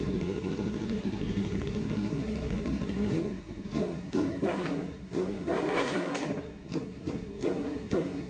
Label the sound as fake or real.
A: fake